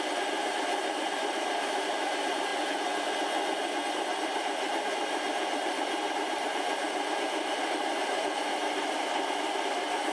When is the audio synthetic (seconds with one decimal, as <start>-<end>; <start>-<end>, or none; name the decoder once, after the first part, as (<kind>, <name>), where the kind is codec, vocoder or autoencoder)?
0.0-2.5 (vocoder, BigVGAN v2); 3.9-10.1